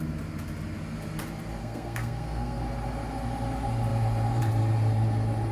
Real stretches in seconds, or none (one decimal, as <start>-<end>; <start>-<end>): 0.0-1.6; 2.6-5.5